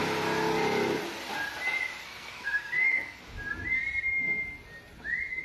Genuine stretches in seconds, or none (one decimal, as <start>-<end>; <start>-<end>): 0.0-2.0; 3.2-5.4